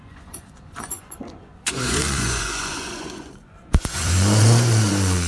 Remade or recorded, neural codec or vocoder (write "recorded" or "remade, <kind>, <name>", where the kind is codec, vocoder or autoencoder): remade, vocoder, Vocos